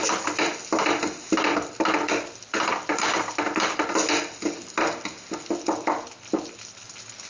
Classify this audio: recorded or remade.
recorded